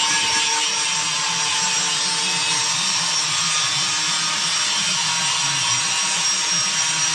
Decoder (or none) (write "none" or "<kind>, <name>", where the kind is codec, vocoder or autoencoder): none